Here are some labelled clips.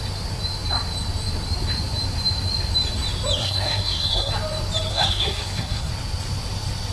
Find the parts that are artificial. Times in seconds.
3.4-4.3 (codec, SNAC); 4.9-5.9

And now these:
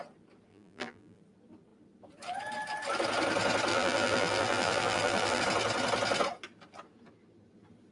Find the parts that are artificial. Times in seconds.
0.5-1.2 (vocoder, BigVGAN v2); 3.7-5.4

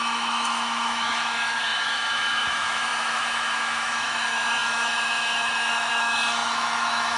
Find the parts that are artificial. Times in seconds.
0.0-7.2 (autoencoder, DAC-VAE)

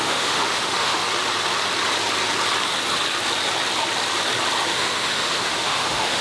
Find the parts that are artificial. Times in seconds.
0.0-1.0 (autoencoder, DAC-VAE); 4.7-6.2

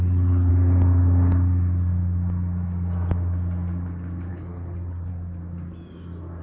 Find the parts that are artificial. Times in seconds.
0.0-0.5 (codec, HILCodec); 4.3-5.1

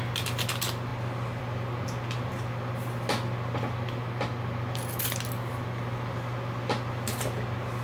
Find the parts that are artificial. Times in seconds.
none

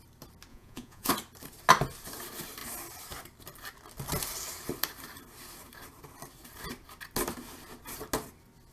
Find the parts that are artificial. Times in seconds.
0.5-1.1 (vocoder, Vocos)